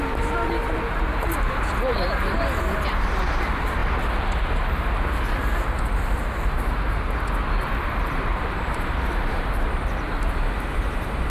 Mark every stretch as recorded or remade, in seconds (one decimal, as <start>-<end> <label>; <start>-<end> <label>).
0.0-3.8 remade; 3.8-8.3 recorded; 8.3-11.3 remade